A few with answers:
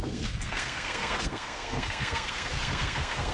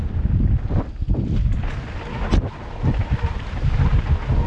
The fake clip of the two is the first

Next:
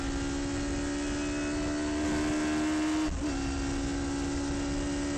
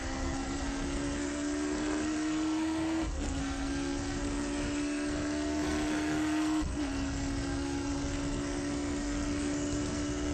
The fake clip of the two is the second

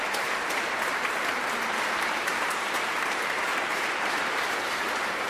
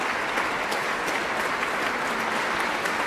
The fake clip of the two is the first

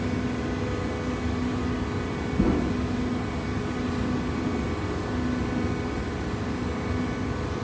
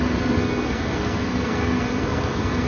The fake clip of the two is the second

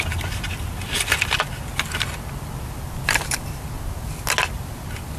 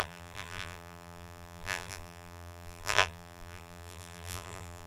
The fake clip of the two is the second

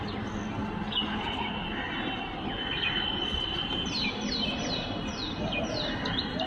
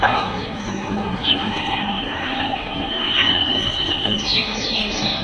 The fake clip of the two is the second